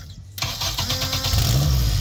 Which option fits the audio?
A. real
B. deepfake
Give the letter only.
A